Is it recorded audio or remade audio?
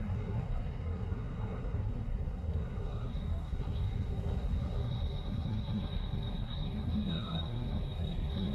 remade